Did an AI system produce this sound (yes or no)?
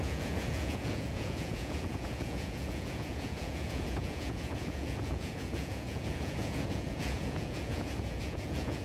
yes